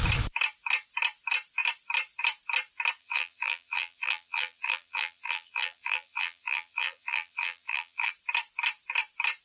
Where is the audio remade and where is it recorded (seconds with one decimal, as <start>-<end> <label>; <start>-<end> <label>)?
0.0-3.0 recorded; 3.0-8.1 remade; 8.1-9.4 recorded